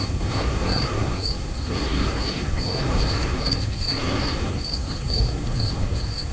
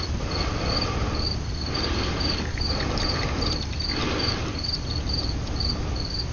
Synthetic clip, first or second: first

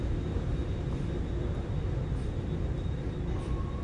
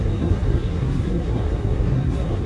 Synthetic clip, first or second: second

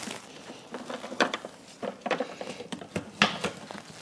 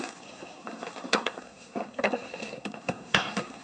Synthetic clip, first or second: second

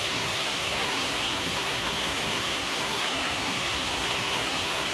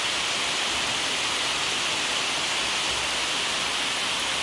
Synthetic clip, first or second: first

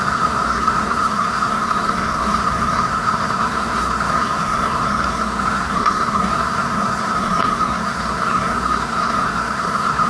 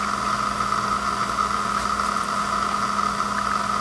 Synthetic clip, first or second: first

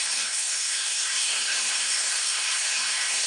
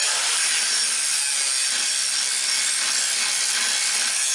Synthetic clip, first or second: first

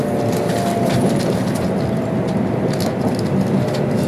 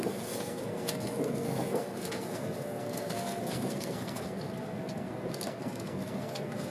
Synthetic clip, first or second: second